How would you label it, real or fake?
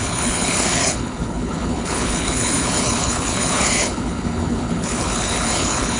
fake